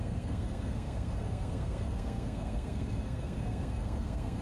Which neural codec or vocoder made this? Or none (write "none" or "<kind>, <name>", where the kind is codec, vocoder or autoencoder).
codec, SNAC